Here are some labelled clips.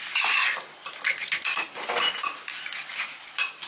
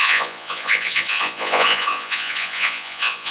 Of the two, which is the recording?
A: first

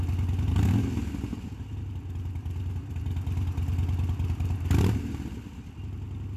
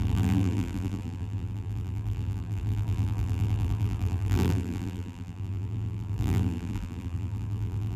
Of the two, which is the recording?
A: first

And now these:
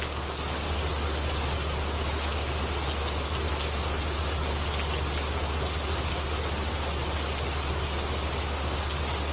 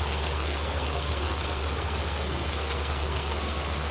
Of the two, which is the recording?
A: first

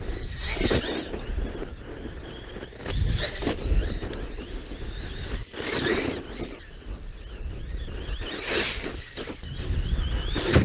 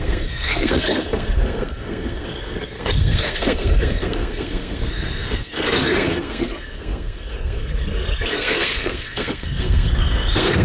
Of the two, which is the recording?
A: first